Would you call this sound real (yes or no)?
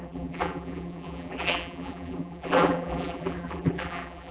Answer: no